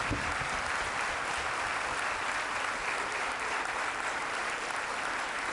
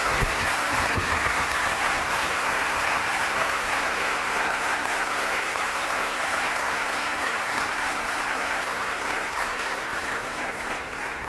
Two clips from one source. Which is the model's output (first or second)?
second